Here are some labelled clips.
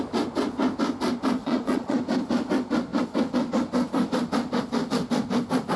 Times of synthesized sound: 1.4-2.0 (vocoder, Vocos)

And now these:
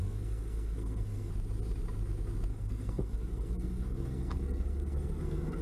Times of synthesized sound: 0.0-1.3 (codec, SNAC); 2.5-5.6